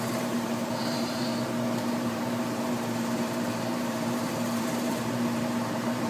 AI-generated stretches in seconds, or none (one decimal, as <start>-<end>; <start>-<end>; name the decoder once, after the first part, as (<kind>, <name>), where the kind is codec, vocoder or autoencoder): 0.0-1.3 (vocoder, BigVGAN v2); 1.9-6.1